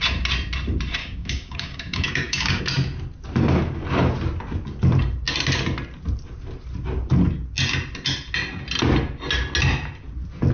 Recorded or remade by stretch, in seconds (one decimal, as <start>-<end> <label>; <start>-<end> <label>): 0.0-1.0 recorded; 1.0-2.6 remade; 2.6-10.5 recorded